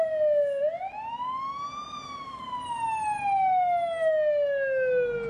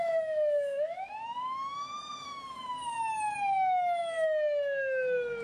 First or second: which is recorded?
first